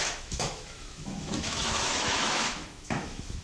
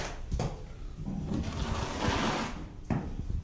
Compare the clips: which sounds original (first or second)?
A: second